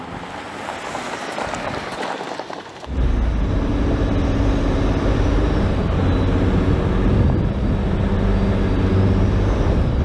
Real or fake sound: real